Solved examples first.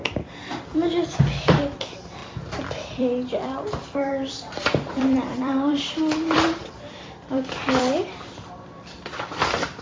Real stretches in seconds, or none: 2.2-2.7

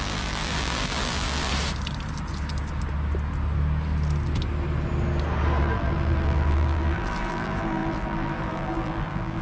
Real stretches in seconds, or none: 1.5-5.6

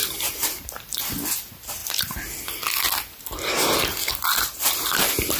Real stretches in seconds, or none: 1.0-5.4

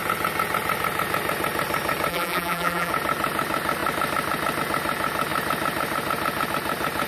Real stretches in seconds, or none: 0.0-2.1; 2.9-7.1

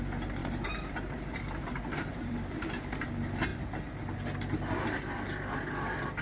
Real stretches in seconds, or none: 0.0-0.4; 3.0-6.2

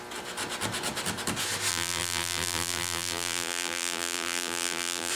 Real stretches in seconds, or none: 0.0-1.7

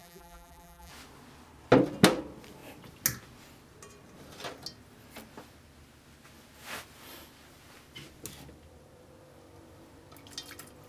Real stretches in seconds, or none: 0.9-10.9